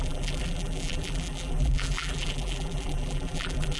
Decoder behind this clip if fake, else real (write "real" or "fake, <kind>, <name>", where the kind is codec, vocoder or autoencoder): fake, vocoder, BigVGAN v2